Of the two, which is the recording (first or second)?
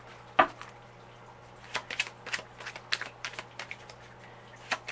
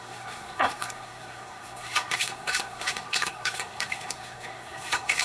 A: first